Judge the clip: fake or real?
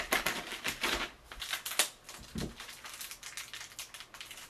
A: real